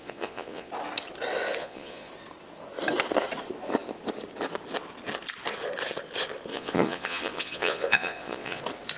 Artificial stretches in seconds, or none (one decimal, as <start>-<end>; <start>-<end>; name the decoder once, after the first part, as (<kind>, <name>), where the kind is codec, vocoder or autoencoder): 0.0-0.7 (vocoder, Vocos); 1.6-2.1; 6.5-8.6